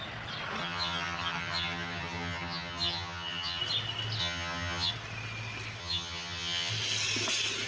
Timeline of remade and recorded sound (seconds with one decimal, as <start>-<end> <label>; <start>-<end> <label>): 0.0-0.6 recorded; 0.6-3.6 remade; 3.6-4.2 recorded; 4.2-4.9 remade; 4.9-5.8 recorded; 5.8-6.7 remade; 6.7-7.7 recorded